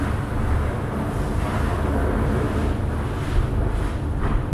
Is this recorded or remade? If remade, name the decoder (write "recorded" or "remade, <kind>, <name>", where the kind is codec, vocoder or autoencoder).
recorded